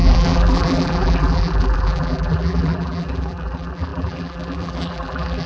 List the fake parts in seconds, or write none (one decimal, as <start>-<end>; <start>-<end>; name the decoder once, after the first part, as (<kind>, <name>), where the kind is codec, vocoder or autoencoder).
0.0-5.5 (vocoder, BigVGAN v2)